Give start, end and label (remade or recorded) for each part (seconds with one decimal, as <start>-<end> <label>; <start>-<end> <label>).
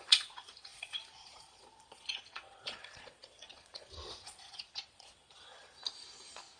0.0-5.8 remade; 5.8-6.6 recorded